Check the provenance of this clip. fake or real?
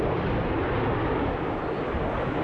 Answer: real